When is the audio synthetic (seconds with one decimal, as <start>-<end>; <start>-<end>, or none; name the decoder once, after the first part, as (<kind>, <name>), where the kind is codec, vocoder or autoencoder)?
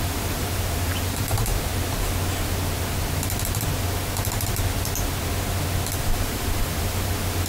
0.0-1.5 (vocoder, BigVGAN v2); 6.0-7.5